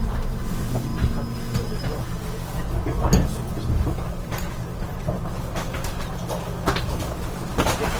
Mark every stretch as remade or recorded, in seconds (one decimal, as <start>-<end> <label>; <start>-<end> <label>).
0.0-0.9 remade; 0.9-3.5 recorded; 3.5-8.0 remade